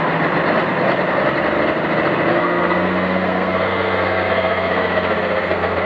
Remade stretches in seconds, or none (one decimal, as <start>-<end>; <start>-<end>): 2.3-5.9